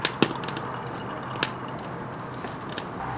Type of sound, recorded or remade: recorded